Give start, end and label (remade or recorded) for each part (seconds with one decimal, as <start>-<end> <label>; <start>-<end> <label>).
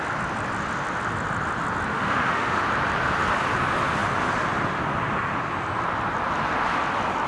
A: 0.0-1.9 recorded; 1.9-2.6 remade; 2.6-7.3 recorded